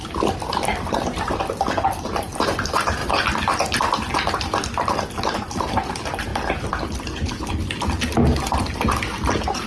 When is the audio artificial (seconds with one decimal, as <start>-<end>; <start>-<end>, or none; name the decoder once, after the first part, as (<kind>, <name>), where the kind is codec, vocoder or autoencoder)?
0.5-1.4 (vocoder, BigVGAN v2)